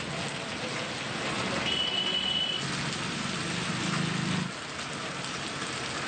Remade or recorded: recorded